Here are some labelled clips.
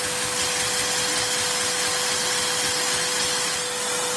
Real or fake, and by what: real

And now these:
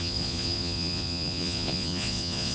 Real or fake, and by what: fake, vocoder, Vocos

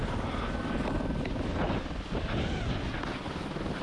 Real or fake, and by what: real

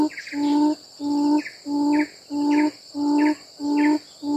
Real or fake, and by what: real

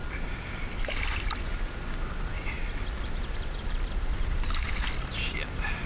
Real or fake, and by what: real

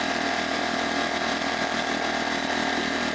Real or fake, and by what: fake, vocoder, BigVGAN v2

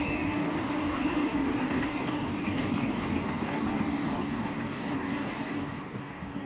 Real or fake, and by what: fake, codec, DAC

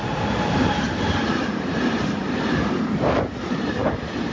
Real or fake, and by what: real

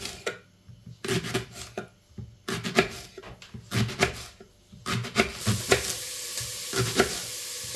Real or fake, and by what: real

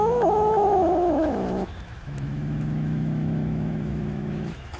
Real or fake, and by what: fake, autoencoder, DAC-VAE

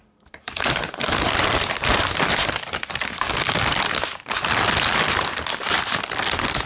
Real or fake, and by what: fake, vocoder, BigVGAN v2